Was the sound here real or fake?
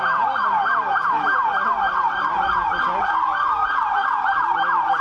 real